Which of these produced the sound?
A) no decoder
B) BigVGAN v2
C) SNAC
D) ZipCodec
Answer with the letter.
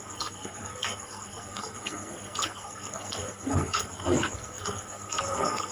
C